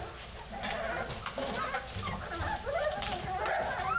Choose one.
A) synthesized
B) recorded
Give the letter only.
B